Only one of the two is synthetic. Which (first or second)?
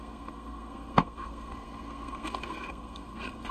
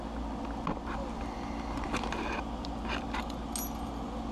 first